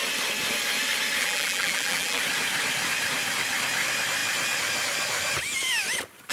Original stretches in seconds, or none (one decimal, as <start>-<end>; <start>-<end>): 0.0-1.2; 2.2-6.3